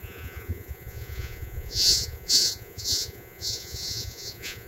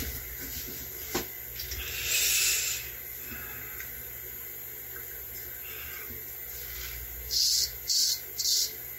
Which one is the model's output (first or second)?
first